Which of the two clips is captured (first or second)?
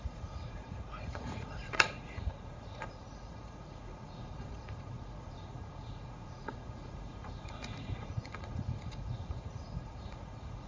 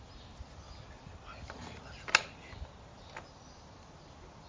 second